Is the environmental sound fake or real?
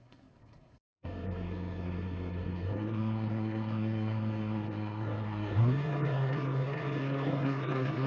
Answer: fake